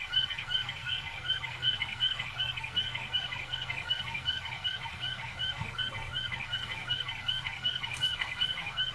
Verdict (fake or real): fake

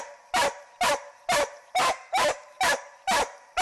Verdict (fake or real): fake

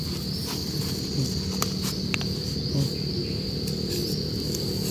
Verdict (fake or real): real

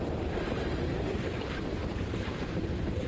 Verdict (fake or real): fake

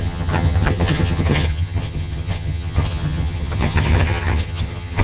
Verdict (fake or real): fake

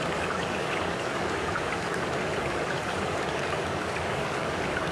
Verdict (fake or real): fake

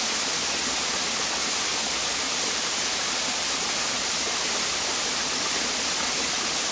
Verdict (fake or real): real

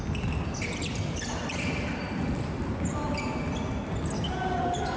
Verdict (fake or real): real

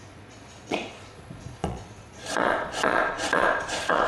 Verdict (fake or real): fake